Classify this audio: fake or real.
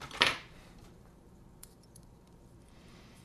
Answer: fake